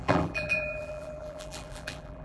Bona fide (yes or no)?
no